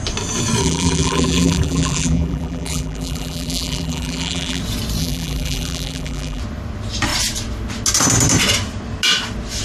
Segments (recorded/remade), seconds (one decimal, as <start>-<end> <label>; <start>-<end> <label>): 0.0-0.6 recorded; 0.6-4.6 remade; 4.6-5.0 recorded; 5.0-6.4 remade; 6.4-9.6 recorded